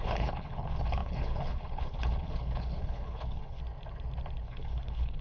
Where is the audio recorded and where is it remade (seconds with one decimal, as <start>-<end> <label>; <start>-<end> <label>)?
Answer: 0.0-3.6 remade; 3.6-4.4 recorded; 4.4-5.2 remade

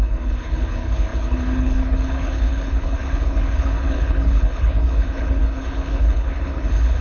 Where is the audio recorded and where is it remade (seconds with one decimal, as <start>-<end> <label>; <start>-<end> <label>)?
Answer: 0.0-7.0 remade

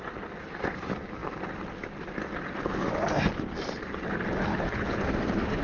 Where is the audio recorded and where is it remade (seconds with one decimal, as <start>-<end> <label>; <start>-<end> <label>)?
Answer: 0.0-4.5 recorded; 4.5-5.0 remade; 5.0-5.6 recorded

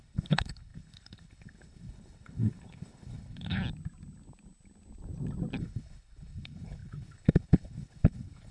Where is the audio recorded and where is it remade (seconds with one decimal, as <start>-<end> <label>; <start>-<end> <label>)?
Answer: 0.0-3.6 remade; 3.6-5.6 recorded; 5.6-8.5 remade

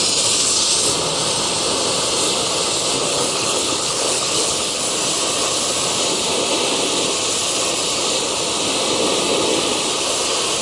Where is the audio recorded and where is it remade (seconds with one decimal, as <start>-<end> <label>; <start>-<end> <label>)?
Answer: 0.0-3.1 recorded; 3.1-4.8 remade; 4.8-10.6 recorded